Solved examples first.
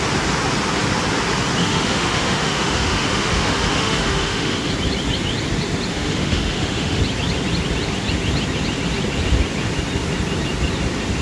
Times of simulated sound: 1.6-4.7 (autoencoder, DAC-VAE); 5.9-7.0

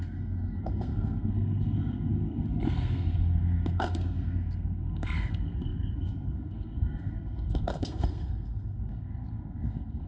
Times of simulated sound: 0.0-10.1 (codec, SNAC)